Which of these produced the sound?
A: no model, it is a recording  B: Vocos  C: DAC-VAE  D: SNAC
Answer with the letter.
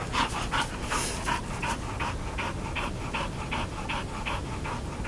A